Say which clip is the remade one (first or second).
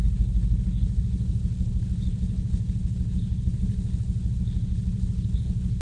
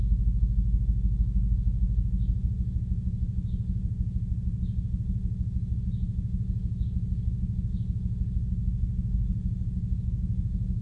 first